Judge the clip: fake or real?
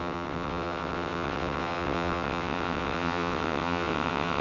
fake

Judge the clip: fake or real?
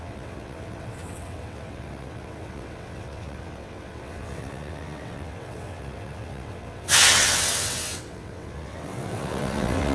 fake